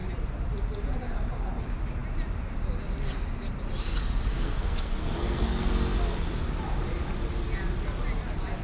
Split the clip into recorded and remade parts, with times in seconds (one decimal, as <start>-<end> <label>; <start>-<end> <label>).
0.0-4.3 recorded; 4.3-5.7 remade; 5.7-8.6 recorded

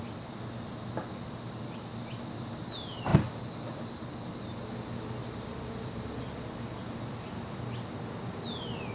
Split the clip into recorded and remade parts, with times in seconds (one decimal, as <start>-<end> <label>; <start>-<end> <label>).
0.0-8.9 recorded

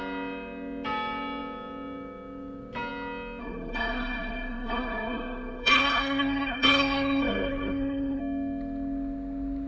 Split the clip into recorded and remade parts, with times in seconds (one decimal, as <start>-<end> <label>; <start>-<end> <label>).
0.0-3.4 recorded; 3.4-8.2 remade; 8.2-9.7 recorded

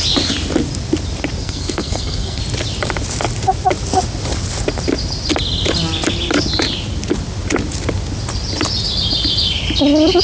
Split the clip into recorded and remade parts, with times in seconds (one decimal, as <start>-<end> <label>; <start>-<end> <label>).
0.0-1.4 recorded; 1.4-2.4 remade; 2.4-10.2 recorded

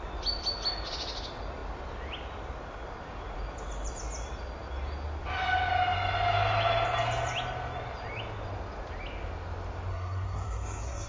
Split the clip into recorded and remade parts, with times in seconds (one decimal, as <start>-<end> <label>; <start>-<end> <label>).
0.0-9.9 recorded; 9.9-11.1 remade

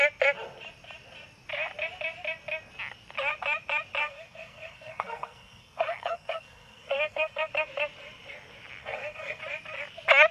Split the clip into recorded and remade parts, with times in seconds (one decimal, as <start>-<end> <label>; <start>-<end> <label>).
0.0-4.0 recorded; 4.0-7.5 remade; 7.5-8.8 recorded; 8.8-9.4 remade; 9.4-10.3 recorded

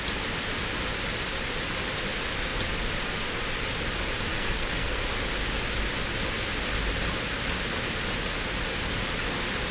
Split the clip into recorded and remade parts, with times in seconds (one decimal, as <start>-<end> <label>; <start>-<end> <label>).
0.0-4.3 recorded; 4.3-5.0 remade; 5.0-9.7 recorded